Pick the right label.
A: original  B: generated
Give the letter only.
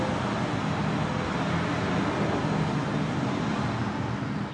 A